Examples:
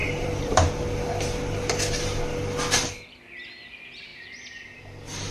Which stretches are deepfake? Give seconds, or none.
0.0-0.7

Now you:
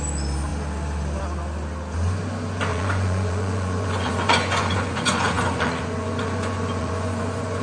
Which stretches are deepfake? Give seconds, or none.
2.7-7.6

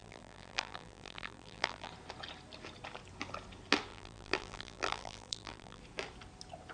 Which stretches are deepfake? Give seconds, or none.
0.0-1.9; 3.9-5.8

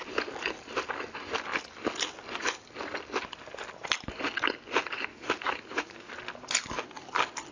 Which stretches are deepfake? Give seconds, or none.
5.1-6.1

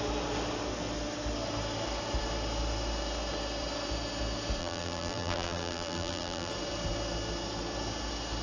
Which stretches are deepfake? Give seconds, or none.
4.6-6.5